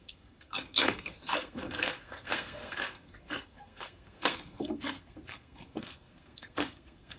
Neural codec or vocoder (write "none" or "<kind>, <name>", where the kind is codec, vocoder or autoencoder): codec, SNAC